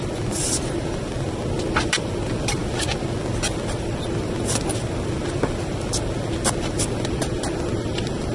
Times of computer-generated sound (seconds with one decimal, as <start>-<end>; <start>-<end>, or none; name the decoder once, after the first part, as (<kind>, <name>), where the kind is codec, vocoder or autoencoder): none

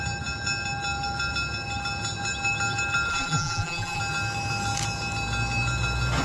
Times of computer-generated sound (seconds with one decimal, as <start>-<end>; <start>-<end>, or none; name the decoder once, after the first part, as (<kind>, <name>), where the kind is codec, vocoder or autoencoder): 3.1-4.0 (vocoder, BigVGAN v2)